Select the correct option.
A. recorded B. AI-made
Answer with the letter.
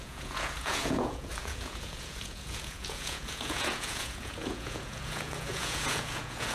B